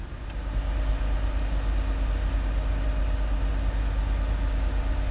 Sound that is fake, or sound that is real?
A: real